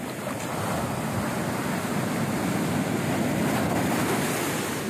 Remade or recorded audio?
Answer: recorded